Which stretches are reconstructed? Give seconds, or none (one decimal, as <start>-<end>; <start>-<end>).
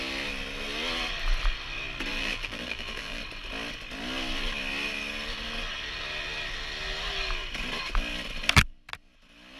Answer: 2.1-3.2